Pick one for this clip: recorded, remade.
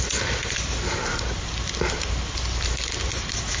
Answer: recorded